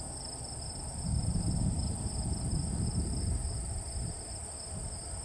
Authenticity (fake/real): real